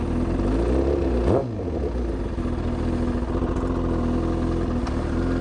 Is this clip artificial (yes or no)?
no